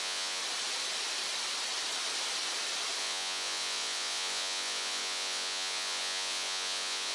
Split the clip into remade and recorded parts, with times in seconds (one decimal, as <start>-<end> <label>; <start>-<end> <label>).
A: 0.0-0.4 remade; 0.4-3.0 recorded; 3.0-7.1 remade